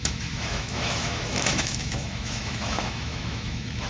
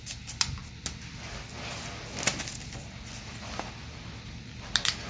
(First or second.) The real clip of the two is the second